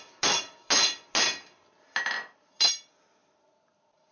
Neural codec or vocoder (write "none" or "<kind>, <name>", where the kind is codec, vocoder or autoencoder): none